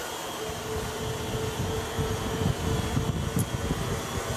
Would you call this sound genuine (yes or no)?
yes